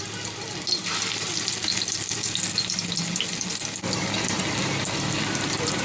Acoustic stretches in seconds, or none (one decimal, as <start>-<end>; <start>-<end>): none